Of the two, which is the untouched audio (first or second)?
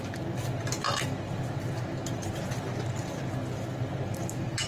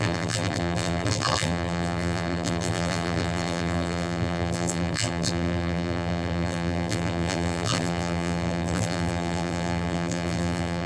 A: first